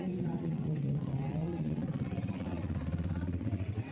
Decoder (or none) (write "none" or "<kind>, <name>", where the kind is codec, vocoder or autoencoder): vocoder, WaveNeXt